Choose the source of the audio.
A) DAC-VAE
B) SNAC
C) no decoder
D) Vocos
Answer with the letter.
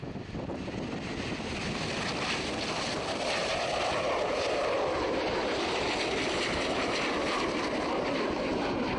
C